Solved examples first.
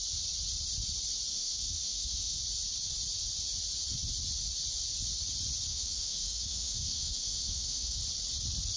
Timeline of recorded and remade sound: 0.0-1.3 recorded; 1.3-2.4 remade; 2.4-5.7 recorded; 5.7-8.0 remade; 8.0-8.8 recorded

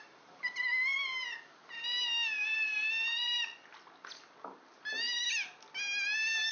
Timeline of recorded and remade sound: 0.0-1.6 remade; 1.6-2.9 recorded; 2.9-3.7 remade; 3.7-6.5 recorded